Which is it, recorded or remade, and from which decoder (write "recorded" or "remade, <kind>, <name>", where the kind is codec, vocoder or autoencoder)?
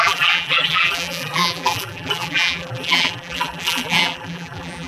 remade, vocoder, BigVGAN v2